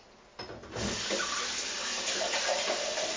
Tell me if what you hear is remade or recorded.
recorded